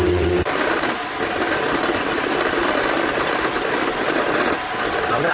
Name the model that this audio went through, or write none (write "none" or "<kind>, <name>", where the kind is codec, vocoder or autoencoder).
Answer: none